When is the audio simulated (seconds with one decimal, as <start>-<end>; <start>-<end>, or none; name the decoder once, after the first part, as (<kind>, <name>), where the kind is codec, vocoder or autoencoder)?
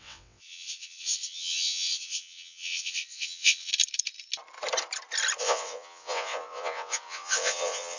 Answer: 0.0-3.7 (vocoder, WaveNeXt); 5.4-8.0